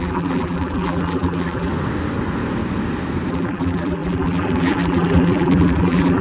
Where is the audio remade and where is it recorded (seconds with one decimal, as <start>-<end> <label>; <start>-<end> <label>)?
0.0-1.7 remade; 1.7-3.3 recorded; 3.3-6.2 remade